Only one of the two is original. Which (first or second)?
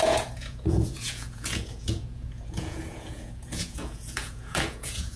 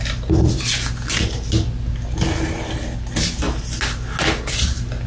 second